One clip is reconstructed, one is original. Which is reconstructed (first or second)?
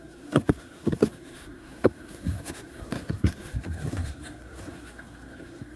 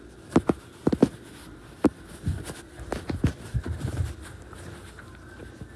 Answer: first